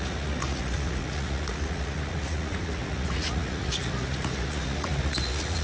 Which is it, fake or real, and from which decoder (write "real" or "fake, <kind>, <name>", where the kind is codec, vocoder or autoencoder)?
fake, vocoder, Vocos